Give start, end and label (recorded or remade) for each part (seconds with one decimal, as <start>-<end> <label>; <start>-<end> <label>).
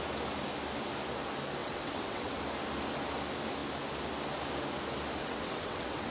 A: 0.0-1.6 recorded; 1.6-2.4 remade; 2.4-5.2 recorded; 5.2-6.1 remade